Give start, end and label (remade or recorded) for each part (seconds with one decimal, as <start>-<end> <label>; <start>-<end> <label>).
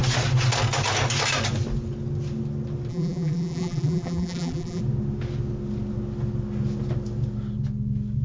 0.0-2.9 recorded; 2.9-4.8 remade; 4.8-8.2 recorded